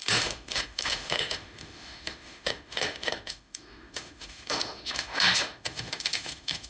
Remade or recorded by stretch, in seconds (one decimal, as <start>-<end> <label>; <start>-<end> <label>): 0.0-6.7 remade